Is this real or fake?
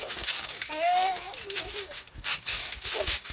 fake